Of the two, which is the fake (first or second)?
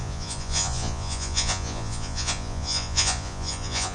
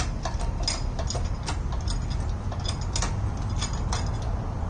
first